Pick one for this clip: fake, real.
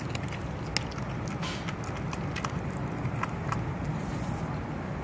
real